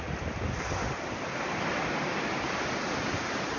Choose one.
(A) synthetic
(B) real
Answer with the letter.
B